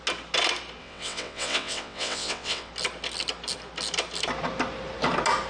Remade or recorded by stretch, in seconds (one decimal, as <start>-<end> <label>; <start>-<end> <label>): 0.0-0.8 recorded; 0.8-2.7 remade; 2.7-5.5 recorded